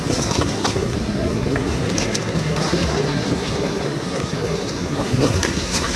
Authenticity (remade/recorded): remade